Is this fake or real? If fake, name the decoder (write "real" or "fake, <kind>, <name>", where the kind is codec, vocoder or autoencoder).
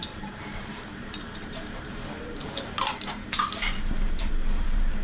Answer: fake, vocoder, BigVGAN v2